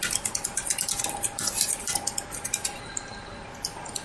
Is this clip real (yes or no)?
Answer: yes